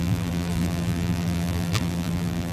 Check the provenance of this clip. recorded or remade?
remade